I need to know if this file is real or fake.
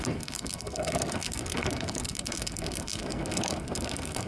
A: fake